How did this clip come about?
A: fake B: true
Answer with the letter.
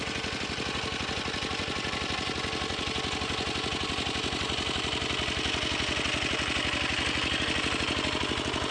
B